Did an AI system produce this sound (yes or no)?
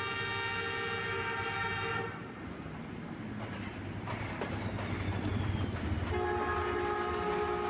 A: no